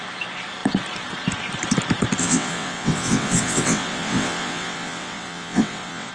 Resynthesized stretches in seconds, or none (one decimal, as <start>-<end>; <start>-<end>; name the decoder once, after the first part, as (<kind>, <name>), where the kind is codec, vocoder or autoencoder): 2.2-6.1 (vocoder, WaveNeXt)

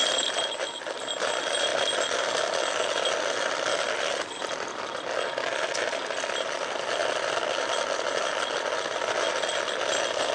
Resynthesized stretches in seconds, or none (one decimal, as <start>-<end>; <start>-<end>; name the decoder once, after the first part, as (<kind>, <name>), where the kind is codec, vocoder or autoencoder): none

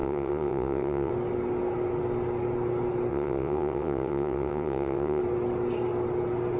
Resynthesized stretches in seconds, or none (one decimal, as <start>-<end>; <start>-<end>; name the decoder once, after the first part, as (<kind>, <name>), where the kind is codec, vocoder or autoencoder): 0.0-1.1 (vocoder, WaveNeXt); 3.1-5.2